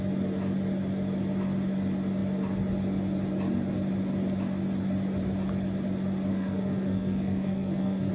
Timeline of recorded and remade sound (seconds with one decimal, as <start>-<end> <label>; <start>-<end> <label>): 0.0-6.3 recorded; 6.3-8.1 remade